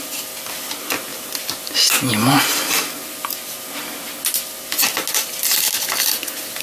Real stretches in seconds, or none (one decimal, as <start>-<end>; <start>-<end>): 0.0-6.6